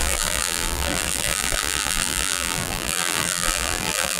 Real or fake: fake